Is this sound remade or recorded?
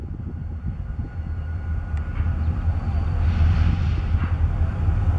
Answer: recorded